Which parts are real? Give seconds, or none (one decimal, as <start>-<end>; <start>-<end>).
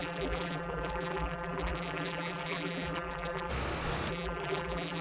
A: 3.5-4.1